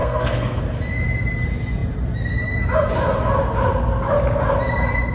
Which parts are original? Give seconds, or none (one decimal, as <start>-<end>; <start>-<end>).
0.6-5.1